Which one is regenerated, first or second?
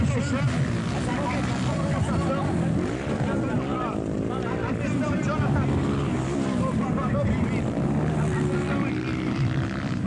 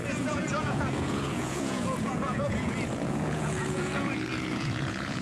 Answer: second